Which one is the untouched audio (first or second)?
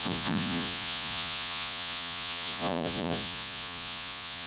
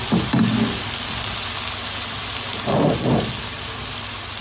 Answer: second